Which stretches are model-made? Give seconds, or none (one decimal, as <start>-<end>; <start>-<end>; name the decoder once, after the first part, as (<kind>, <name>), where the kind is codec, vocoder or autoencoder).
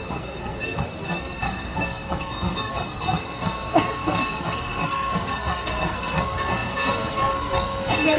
0.0-8.2 (codec, SNAC)